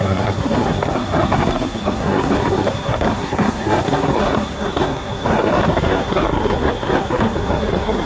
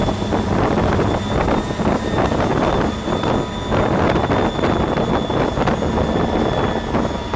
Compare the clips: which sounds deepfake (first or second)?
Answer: first